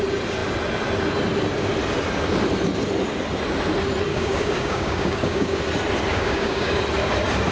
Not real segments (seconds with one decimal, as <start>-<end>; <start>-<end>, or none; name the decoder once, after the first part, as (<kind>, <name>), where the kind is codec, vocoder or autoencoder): 4.1-5.6 (codec, DAC); 6.1-6.8